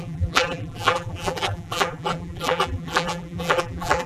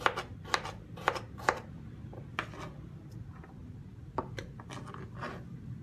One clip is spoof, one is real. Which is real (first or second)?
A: second